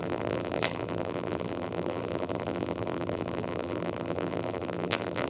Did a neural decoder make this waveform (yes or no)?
yes